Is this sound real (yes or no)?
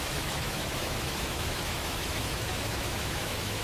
no